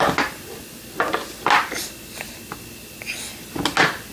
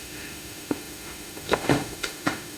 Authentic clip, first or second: first